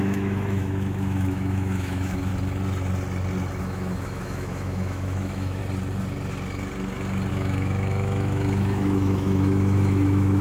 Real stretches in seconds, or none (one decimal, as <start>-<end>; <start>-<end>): 2.3-3.6; 5.6-7.3